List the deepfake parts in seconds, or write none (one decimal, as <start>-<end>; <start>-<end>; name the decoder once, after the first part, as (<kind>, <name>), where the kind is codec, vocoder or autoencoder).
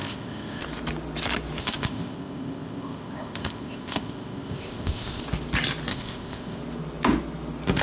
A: 0.0-0.6 (codec, ZipCodec); 1.6-5.2; 5.9-6.6